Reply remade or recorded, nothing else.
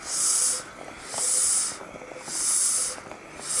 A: recorded